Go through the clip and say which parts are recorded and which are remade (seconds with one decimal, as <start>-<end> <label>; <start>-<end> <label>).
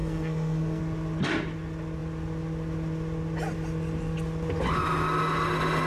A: 0.0-0.8 remade; 0.8-5.9 recorded